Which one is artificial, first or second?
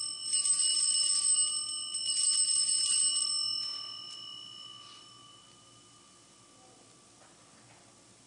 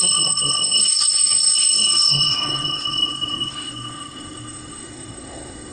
second